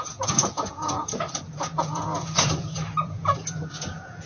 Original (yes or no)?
no